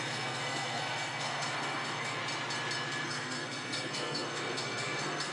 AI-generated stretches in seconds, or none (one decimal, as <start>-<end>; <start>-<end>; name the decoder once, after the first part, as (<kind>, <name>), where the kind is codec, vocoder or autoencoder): 0.0-2.2 (codec, SNAC); 3.0-5.3